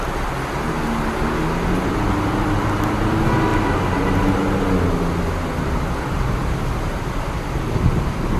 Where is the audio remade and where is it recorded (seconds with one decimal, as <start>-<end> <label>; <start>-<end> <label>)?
0.0-8.4 recorded